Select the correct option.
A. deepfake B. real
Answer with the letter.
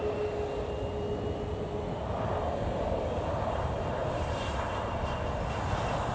B